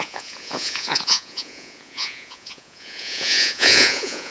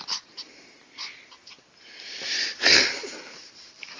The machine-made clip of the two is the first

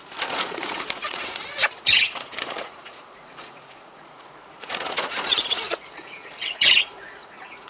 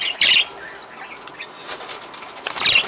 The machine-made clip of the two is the first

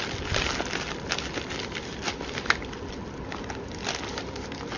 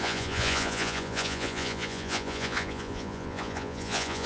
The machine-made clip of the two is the second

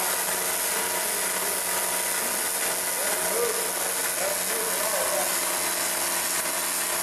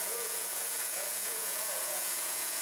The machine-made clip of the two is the second